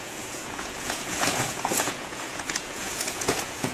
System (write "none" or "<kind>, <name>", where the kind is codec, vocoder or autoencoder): vocoder, Vocos